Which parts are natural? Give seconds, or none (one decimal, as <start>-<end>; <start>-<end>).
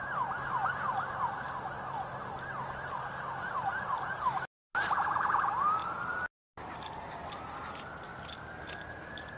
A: 0.0-3.5; 8.1-9.4